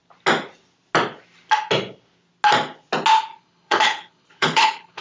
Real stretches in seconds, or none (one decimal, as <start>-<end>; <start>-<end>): 0.0-3.3